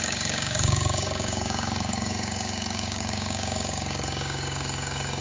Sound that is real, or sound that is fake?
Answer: fake